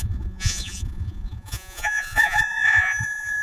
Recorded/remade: remade